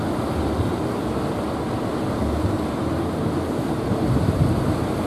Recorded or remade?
recorded